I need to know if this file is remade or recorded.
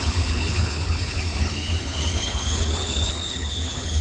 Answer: remade